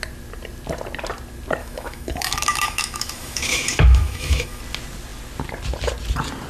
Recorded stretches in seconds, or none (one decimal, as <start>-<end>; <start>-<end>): 0.0-1.6; 4.6-6.5

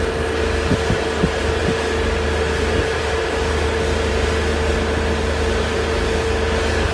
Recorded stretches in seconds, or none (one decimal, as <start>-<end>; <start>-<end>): 0.0-6.9

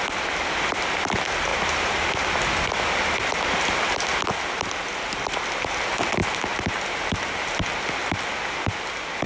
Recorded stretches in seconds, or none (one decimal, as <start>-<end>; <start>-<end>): 0.0-9.3

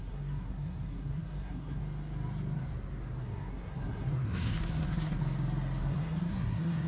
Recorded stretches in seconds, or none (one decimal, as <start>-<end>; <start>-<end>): 1.8-3.2; 5.2-5.8

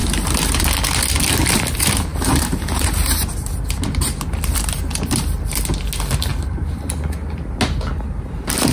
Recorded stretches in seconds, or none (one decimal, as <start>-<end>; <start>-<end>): 0.0-2.1; 4.8-6.3; 6.8-8.7

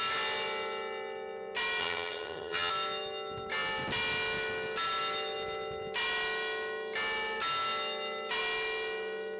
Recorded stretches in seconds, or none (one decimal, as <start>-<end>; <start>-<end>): 0.0-1.8; 2.7-9.4

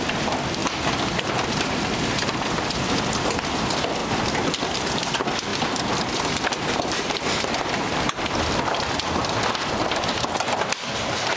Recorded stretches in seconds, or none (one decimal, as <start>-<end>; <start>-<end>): none

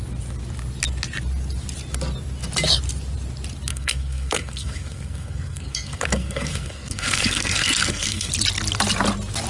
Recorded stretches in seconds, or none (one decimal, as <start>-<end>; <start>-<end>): 0.0-3.7; 8.3-9.5